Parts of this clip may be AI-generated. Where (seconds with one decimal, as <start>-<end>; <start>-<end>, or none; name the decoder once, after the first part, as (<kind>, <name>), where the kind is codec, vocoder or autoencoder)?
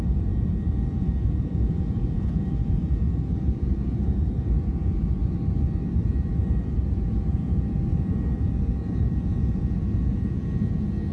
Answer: 0.0-5.2 (vocoder, Vocos); 6.2-11.1